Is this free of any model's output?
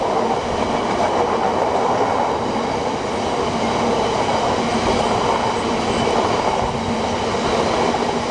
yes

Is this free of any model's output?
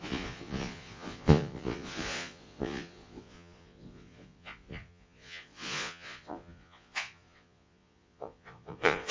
no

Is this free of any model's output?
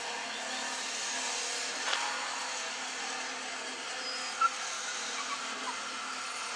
yes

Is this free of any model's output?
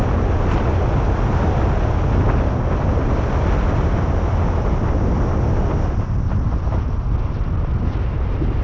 yes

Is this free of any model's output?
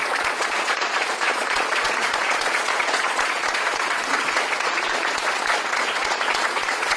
no